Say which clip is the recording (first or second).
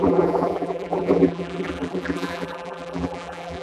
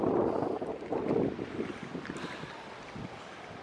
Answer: second